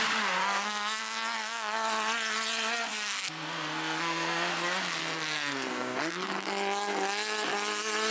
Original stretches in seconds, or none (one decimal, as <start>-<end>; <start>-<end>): 0.0-0.4; 1.0-2.9; 4.5-5.0; 6.0-8.1